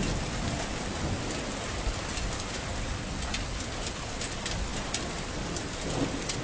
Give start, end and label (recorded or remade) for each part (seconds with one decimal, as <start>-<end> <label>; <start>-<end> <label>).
0.0-2.7 recorded; 2.7-4.0 remade; 4.0-6.4 recorded